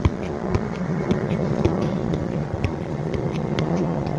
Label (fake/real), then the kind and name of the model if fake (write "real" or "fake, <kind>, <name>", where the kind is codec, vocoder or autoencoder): fake, vocoder, Vocos